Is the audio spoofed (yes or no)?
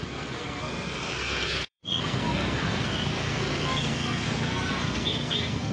yes